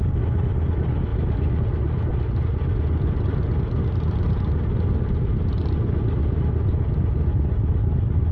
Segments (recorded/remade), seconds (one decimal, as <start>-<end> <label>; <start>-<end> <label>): 0.0-1.1 recorded; 1.1-1.6 remade; 1.6-8.3 recorded